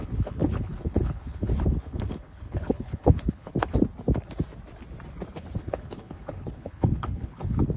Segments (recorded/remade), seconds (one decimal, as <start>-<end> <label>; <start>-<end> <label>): 0.0-3.5 remade; 3.5-5.6 recorded; 5.6-7.8 remade